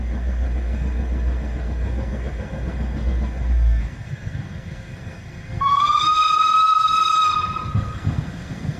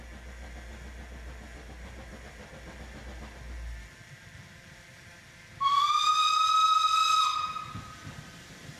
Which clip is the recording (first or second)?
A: second